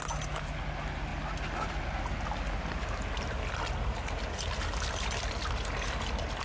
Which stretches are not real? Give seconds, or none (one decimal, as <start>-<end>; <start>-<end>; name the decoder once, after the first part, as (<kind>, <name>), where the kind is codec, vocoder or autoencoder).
none